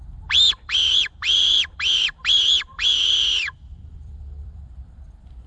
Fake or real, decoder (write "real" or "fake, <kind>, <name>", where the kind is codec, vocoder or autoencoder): fake, vocoder, BigVGAN v2